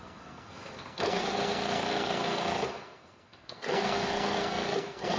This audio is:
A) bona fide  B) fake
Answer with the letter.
B